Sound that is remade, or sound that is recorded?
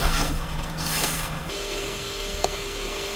remade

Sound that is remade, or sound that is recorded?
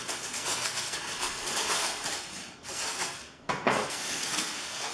remade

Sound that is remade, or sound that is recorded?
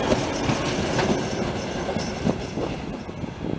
recorded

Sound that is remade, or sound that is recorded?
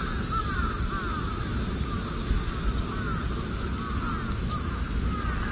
recorded